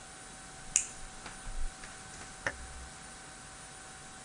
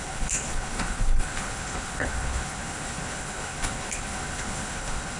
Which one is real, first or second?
first